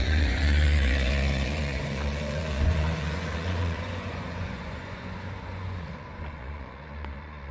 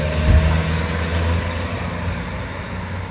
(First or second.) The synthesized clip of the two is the first